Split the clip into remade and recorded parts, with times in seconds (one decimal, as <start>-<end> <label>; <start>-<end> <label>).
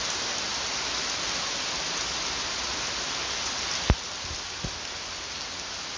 0.0-6.0 recorded